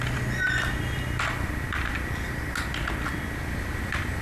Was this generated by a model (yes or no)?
no